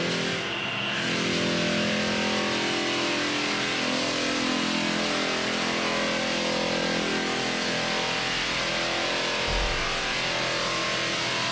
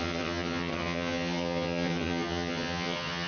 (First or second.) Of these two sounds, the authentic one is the first